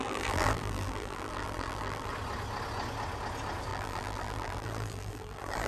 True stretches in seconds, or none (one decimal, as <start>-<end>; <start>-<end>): 2.1-3.7